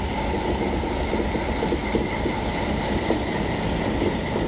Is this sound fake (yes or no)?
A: no